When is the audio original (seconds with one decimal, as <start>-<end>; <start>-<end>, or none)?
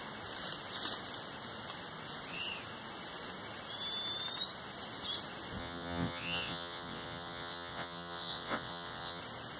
0.0-5.6; 9.2-9.6